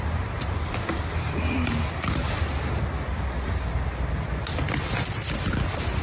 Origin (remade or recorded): recorded